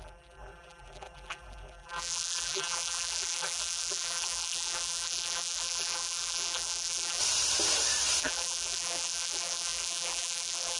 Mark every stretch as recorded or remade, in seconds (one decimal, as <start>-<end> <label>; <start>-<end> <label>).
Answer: 0.0-7.2 remade; 7.2-8.2 recorded; 8.2-10.8 remade